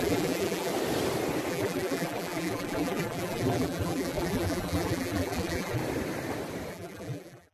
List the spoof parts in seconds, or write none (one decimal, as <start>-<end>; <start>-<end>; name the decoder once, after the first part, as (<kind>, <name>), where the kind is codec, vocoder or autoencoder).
0.0-0.7 (vocoder, BigVGAN v2); 1.5-5.8; 6.7-7.5